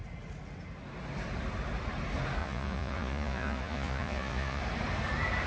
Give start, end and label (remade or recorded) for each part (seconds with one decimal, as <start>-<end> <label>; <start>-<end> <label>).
0.0-2.4 recorded; 2.4-4.6 remade; 4.6-5.5 recorded